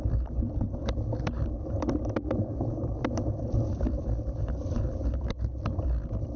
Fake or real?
fake